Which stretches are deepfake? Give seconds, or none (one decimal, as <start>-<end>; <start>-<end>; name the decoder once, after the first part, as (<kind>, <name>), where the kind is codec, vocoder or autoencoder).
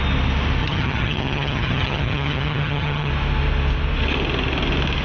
0.6-3.1 (vocoder, HiFi-GAN)